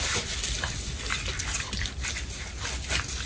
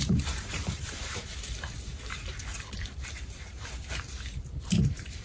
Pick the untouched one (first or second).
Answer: first